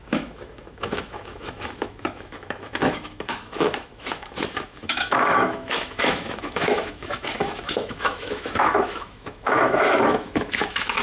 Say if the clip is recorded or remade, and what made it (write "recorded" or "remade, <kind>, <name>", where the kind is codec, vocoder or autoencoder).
remade, autoencoder, DAC-VAE